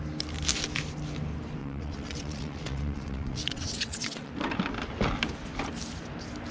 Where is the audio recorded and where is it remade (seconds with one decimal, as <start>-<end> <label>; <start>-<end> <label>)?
0.0-1.6 recorded; 1.6-4.3 remade; 4.3-6.5 recorded